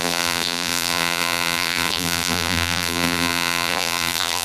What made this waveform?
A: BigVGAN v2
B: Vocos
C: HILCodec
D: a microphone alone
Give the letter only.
A